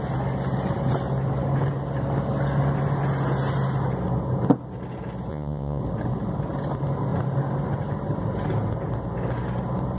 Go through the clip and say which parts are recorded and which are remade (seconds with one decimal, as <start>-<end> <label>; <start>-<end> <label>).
0.0-5.3 recorded; 5.3-5.8 remade; 5.8-10.0 recorded